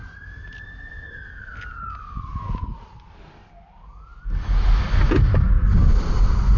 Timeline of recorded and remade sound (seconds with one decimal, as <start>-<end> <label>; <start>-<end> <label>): 0.0-6.6 recorded